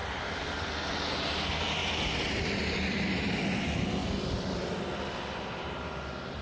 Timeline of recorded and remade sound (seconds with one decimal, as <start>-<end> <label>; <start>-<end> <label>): 0.0-0.9 recorded; 0.9-4.0 remade; 4.0-4.5 recorded; 4.5-6.4 remade